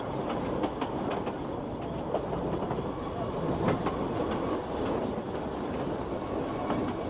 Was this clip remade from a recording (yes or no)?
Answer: no